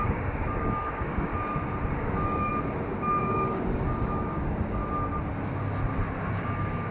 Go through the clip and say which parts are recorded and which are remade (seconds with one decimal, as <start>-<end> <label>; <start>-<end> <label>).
0.0-1.3 remade; 1.3-1.9 recorded; 1.9-2.5 remade; 2.5-3.2 recorded; 3.2-4.8 remade; 4.8-6.3 recorded; 6.3-6.9 remade